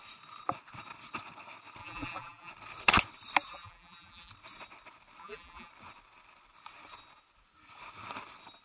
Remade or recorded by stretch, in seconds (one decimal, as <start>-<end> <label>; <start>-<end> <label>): 0.0-1.8 recorded; 1.8-2.5 remade; 2.5-3.5 recorded; 3.5-4.3 remade; 4.3-5.2 recorded; 5.2-5.7 remade; 5.7-8.6 recorded